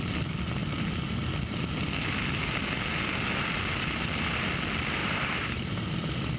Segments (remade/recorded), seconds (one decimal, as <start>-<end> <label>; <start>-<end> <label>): 0.0-5.0 recorded; 5.0-5.9 remade; 5.9-6.4 recorded